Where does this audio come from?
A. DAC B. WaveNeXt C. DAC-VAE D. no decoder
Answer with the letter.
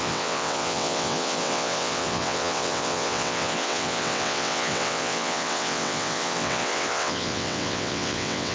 B